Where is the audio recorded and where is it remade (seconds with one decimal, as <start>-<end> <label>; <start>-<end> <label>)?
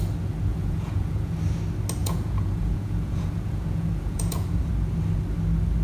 0.0-0.5 recorded; 0.5-1.3 remade; 1.3-2.0 recorded; 2.0-4.7 remade; 4.7-5.8 recorded